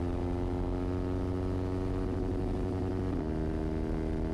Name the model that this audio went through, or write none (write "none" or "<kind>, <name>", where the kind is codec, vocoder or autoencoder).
none